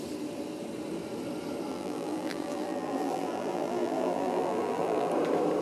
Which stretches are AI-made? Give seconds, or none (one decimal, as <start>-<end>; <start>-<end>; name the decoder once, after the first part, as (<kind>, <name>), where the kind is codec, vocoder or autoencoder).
1.7-5.1 (vocoder, BigVGAN v2)